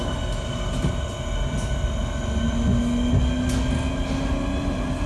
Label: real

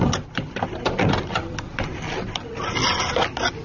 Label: real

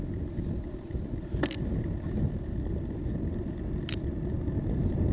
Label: real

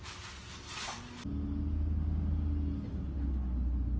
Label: real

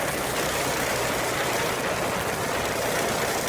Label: real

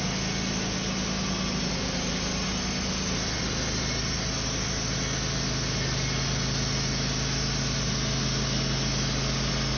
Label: real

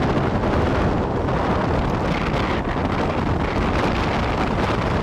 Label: real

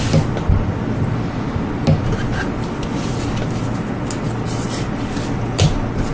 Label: real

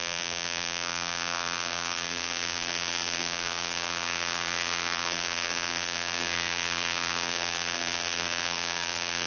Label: fake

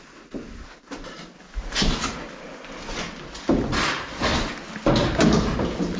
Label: real